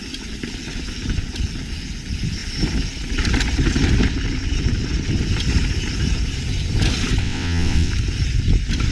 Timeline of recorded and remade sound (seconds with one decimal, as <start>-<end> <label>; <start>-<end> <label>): 0.0-7.2 recorded; 7.2-7.9 remade; 7.9-8.9 recorded